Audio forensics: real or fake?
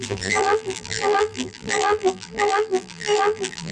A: fake